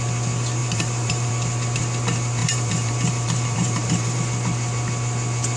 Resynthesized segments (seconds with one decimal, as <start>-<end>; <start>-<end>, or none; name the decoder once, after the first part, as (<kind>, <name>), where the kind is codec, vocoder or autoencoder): 0.6-1.3 (vocoder, BigVGAN v2); 2.4-4.2